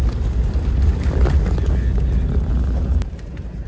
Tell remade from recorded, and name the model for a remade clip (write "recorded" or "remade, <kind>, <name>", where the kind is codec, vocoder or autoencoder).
recorded